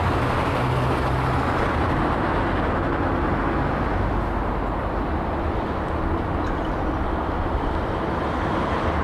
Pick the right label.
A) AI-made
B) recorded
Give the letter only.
B